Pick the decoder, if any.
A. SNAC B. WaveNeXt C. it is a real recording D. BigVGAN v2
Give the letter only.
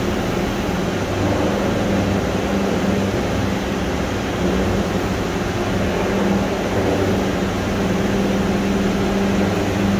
C